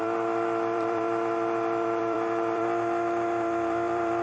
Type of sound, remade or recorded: remade